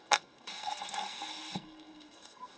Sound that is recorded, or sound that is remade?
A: remade